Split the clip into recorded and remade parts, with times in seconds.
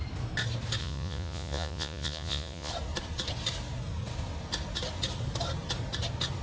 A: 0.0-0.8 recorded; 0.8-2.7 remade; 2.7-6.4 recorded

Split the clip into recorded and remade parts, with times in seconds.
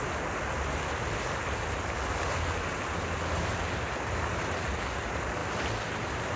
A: 0.0-6.4 recorded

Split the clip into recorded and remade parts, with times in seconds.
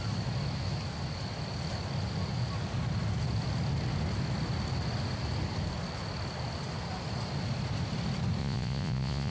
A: 0.0-8.4 recorded; 8.4-9.3 remade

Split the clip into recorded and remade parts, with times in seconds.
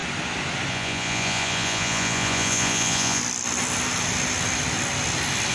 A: 0.0-0.7 recorded; 0.7-3.2 remade; 3.2-5.5 recorded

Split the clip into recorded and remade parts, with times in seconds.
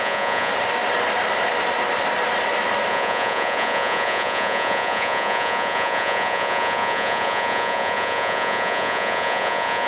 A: 0.0-0.5 remade; 0.5-2.9 recorded; 2.9-9.9 remade